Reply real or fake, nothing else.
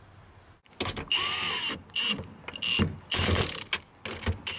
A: real